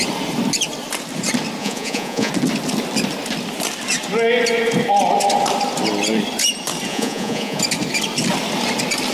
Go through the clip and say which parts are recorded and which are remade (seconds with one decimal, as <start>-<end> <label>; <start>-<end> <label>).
0.0-1.6 recorded; 1.6-2.3 remade; 2.3-6.9 recorded; 6.9-7.6 remade; 7.6-9.1 recorded